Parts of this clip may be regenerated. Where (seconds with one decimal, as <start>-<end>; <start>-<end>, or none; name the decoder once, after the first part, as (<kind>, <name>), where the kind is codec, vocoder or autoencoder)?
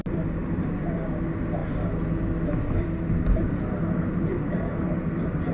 none